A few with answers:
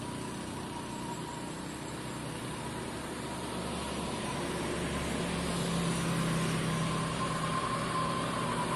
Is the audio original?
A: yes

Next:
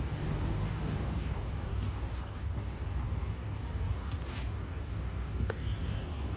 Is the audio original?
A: no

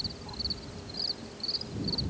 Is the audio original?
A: yes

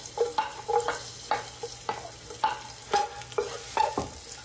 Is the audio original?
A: yes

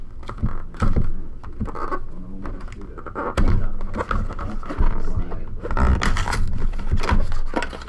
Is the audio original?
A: yes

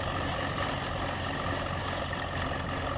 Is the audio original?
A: yes